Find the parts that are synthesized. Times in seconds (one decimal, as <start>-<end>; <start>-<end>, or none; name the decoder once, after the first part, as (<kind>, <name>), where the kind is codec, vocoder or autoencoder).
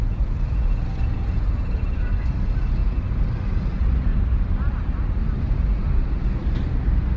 0.0-2.8 (vocoder, Vocos); 3.5-4.1; 5.4-6.4